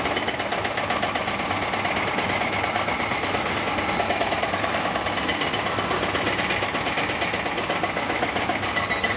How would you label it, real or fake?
real